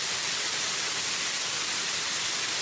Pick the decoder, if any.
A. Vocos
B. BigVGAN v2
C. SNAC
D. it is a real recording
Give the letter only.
B